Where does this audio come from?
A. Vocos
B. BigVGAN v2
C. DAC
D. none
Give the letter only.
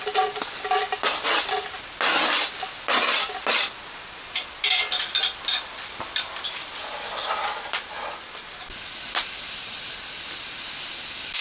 D